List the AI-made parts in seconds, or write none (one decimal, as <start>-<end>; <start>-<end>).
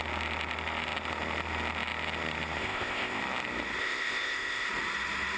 2.6-3.2; 3.8-4.7